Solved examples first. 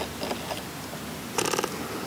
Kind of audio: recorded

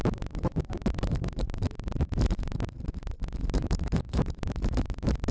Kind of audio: remade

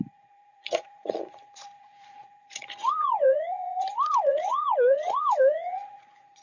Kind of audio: remade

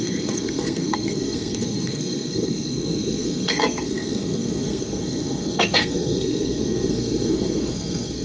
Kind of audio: remade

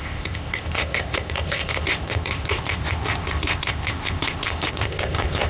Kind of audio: remade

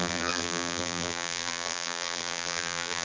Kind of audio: remade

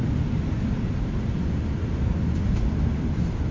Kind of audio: recorded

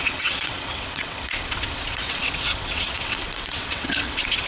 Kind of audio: remade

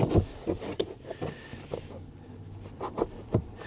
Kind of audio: recorded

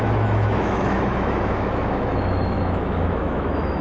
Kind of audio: remade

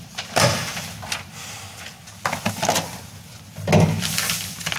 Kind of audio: recorded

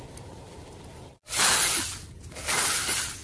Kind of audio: recorded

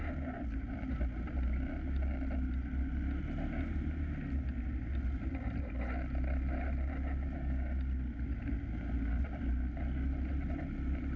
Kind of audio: recorded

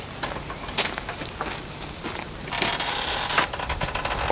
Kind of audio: recorded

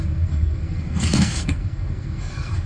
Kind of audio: remade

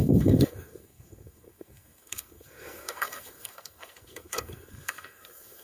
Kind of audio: remade